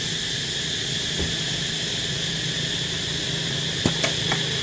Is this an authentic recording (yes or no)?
yes